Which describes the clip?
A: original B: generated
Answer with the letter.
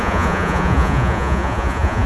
B